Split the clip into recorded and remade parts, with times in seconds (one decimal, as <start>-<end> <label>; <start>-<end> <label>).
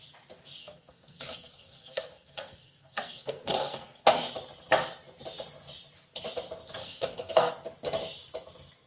0.0-0.6 recorded; 0.6-4.3 remade; 4.3-6.8 recorded; 6.8-7.5 remade; 7.5-8.9 recorded